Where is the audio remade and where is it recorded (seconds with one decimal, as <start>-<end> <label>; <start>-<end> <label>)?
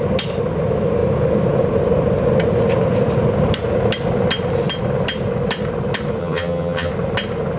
0.0-6.2 recorded; 6.2-6.9 remade; 6.9-7.6 recorded